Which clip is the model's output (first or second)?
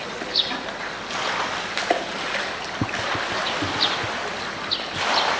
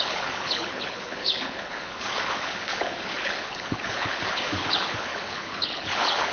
second